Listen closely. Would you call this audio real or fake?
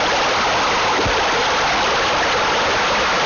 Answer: real